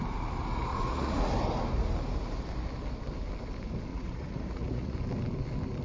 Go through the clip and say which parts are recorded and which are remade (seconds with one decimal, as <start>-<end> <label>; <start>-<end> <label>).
0.0-0.7 recorded; 0.7-1.3 remade; 1.3-3.9 recorded; 3.9-5.0 remade; 5.0-5.8 recorded